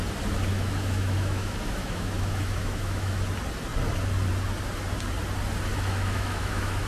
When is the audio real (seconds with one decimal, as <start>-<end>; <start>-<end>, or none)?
0.0-0.5; 3.1-5.7